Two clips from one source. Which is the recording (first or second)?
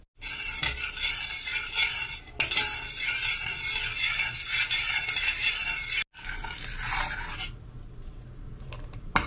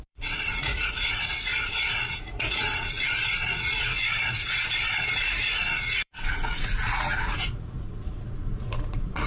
first